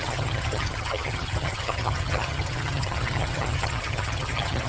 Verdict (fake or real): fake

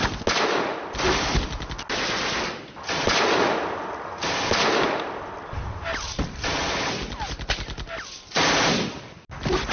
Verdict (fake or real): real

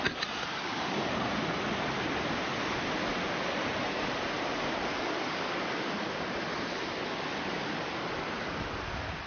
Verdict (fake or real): real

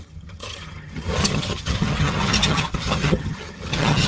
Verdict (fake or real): fake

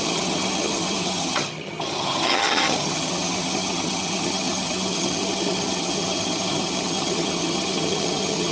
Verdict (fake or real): fake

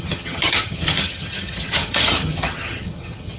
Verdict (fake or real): fake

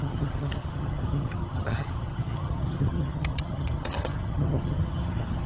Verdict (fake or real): fake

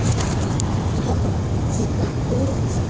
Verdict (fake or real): real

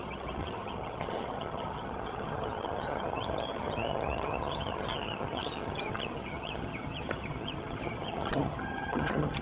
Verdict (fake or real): fake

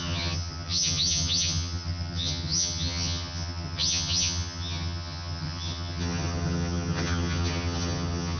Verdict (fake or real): fake